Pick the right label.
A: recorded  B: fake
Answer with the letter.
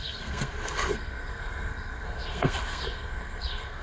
B